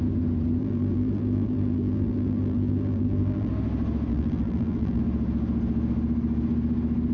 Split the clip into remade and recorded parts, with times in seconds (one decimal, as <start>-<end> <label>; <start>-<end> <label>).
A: 0.0-0.6 recorded; 0.6-3.5 remade; 3.5-4.1 recorded; 4.1-5.0 remade; 5.0-7.1 recorded